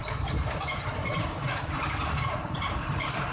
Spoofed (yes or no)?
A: yes